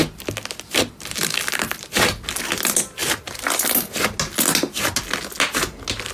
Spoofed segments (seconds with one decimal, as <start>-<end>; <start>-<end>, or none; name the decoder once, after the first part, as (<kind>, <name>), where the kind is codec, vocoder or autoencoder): none